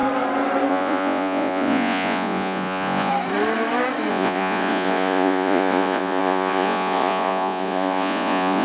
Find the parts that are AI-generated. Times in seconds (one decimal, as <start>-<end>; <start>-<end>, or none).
0.7-3.1; 4.1-8.6